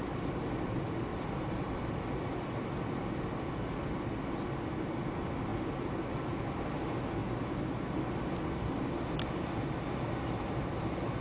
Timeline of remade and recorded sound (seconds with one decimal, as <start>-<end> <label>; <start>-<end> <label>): 0.0-1.1 recorded; 1.1-1.9 remade; 1.9-11.2 recorded